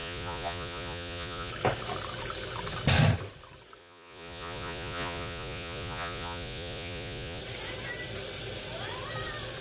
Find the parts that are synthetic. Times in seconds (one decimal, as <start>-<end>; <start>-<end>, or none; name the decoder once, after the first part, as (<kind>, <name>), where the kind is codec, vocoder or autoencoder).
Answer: 0.0-1.5 (vocoder, Vocos); 3.8-7.4